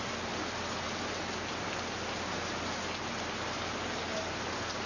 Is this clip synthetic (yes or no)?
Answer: no